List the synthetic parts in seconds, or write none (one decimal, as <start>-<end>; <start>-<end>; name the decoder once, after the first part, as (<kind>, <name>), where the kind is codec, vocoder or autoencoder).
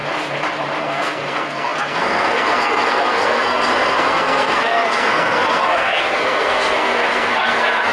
0.8-7.9 (codec, SNAC)